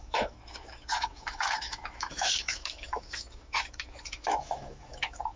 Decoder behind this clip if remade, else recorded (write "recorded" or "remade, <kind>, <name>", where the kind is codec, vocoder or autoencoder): remade, autoencoder, DAC-VAE